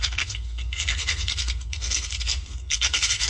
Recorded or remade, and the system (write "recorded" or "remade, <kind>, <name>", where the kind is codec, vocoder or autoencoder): remade, codec, SNAC